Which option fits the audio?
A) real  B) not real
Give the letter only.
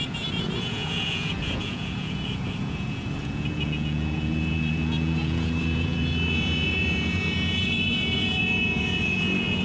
B